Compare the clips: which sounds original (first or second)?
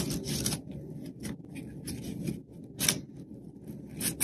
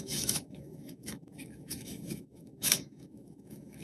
first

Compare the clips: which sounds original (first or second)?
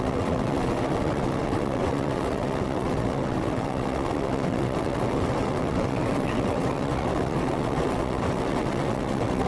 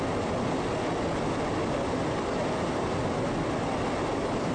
second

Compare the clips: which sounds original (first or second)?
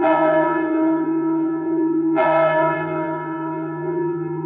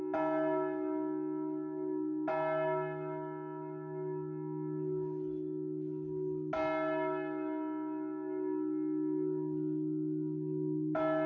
second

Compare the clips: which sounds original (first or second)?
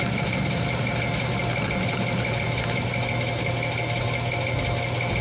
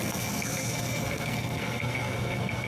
first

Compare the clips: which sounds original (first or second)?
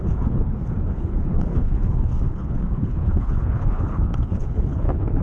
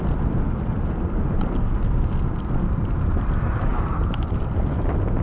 second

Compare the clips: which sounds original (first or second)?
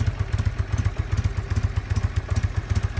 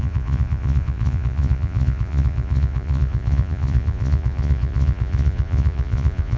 first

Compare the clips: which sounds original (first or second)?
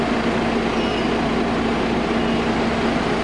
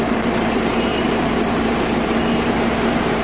first